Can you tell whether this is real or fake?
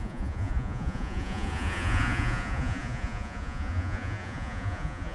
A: fake